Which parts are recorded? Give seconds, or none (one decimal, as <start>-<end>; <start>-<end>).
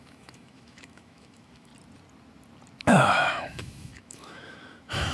1.7-2.8